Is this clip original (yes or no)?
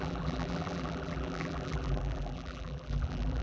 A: no